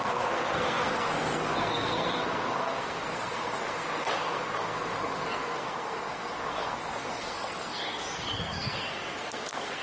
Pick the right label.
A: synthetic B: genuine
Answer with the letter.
A